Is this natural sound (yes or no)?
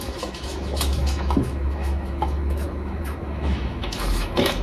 no